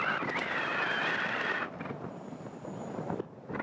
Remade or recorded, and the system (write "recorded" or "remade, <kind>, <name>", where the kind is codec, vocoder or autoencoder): recorded